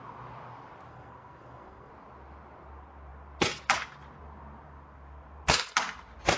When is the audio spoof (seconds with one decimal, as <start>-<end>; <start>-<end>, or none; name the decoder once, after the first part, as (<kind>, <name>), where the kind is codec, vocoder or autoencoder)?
0.9-1.9 (codec, SNAC)